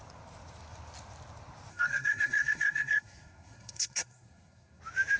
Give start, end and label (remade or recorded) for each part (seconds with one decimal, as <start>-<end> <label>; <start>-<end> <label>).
0.0-1.7 recorded; 1.7-4.8 remade; 4.8-5.2 recorded